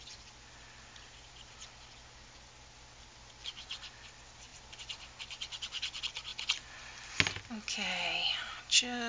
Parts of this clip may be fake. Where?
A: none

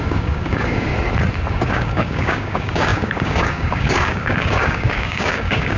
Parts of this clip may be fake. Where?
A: 0.0-0.9 (codec, DAC); 1.5-5.8

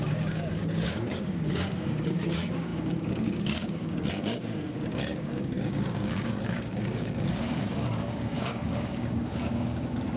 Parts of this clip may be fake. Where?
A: 0.0-10.2 (codec, DAC)

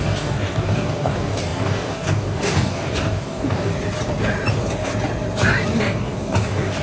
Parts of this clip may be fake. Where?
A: 0.0-3.7 (codec, DAC); 4.5-4.9; 5.8-6.8

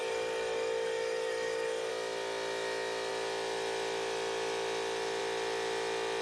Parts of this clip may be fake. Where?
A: 0.0-1.9 (codec, DAC)